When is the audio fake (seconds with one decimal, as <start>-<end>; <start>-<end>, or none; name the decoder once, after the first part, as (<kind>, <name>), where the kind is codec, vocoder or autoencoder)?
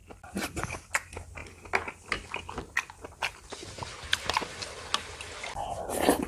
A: none